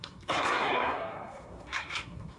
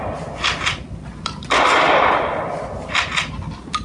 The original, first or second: second